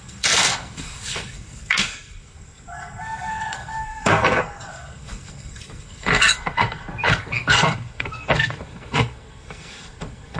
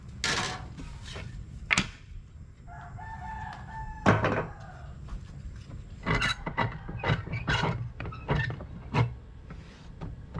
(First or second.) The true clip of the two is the second